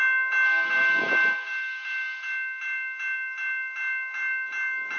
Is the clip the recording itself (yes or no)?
yes